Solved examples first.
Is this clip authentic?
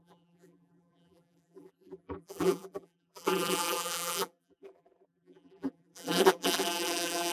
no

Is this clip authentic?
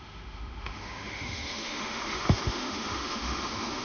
no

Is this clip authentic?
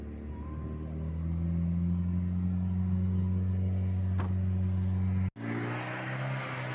yes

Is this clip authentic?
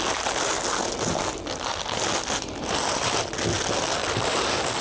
yes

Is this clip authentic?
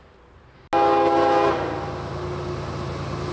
yes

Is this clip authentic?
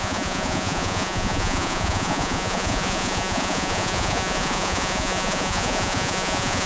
no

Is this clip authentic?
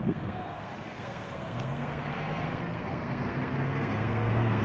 no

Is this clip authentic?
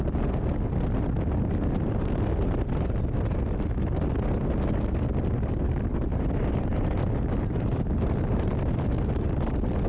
yes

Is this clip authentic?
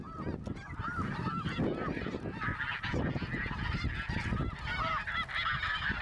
yes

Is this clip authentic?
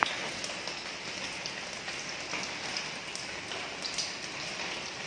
yes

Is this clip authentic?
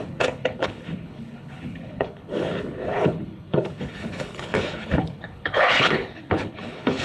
no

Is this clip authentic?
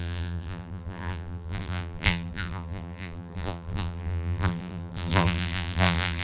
no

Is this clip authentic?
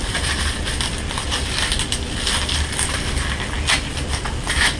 yes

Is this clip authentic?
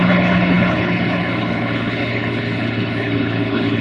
no